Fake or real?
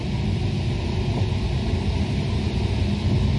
real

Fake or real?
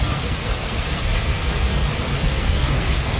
fake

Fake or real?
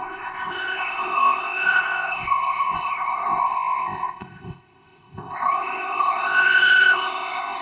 fake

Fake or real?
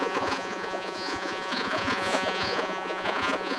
fake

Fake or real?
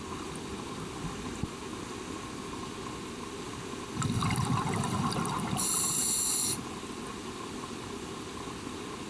real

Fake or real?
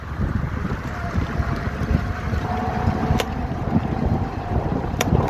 fake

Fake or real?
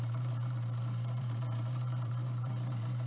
fake